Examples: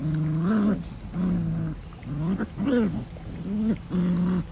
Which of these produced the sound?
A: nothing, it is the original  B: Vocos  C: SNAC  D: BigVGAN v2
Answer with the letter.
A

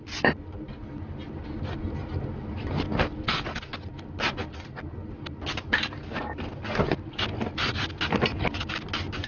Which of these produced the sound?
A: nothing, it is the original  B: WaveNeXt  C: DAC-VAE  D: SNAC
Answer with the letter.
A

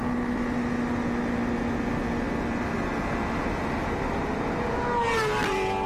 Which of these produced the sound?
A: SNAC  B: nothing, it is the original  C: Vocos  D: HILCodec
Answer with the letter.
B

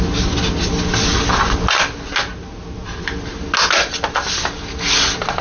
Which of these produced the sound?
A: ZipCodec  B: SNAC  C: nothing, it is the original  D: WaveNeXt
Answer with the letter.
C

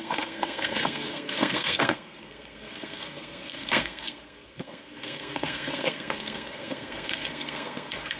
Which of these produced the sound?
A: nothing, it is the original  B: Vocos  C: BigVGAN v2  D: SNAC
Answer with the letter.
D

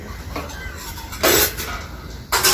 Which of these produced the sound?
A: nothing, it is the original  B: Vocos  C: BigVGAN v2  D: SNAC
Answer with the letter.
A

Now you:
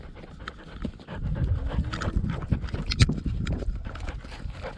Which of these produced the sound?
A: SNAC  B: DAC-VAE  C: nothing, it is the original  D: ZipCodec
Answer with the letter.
C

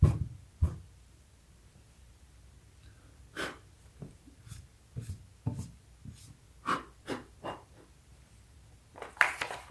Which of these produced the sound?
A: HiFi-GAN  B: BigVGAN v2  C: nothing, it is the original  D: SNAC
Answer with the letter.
C